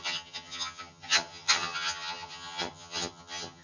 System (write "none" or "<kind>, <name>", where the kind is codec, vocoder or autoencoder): vocoder, HiFi-GAN